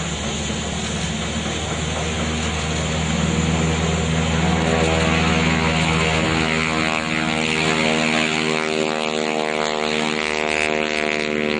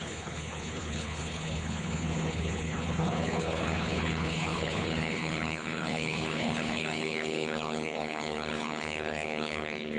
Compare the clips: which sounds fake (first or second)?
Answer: second